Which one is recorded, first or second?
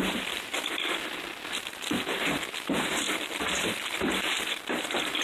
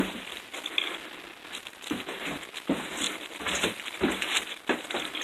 second